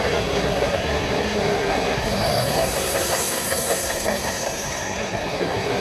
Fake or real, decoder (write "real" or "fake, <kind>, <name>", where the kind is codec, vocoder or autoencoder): fake, codec, SNAC